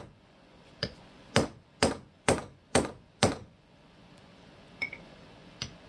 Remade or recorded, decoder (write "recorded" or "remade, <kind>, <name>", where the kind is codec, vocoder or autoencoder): remade, vocoder, Vocos